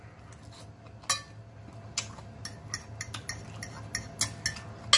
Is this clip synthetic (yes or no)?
no